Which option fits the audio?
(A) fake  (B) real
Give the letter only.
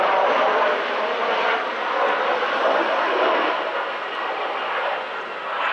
B